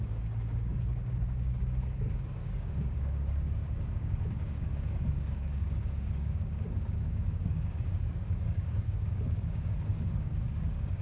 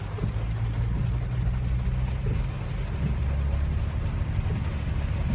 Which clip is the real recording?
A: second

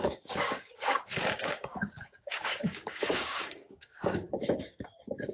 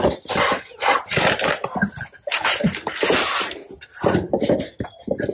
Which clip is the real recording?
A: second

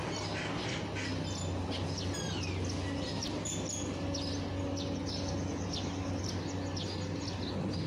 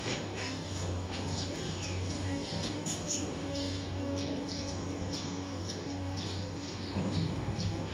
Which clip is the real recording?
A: first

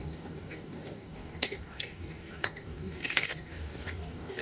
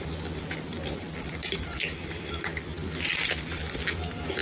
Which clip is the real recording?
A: second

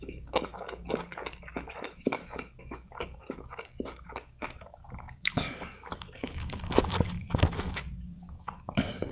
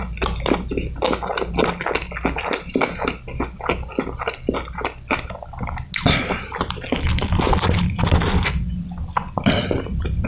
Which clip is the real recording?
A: second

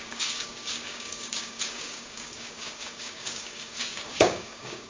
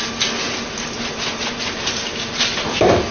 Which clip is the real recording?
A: second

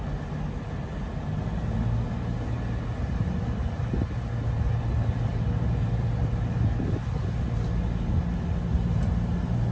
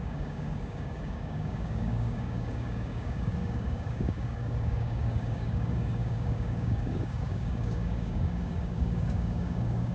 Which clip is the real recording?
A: first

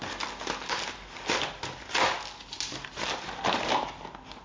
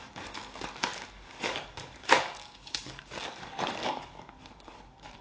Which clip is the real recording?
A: first